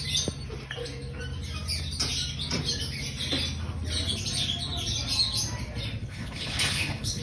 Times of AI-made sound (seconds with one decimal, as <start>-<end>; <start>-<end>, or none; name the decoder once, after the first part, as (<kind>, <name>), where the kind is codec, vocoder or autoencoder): 6.0-7.2 (codec, HILCodec)